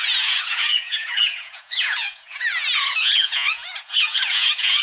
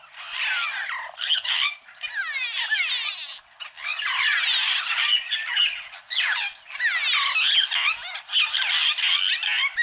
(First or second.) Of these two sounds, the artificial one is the first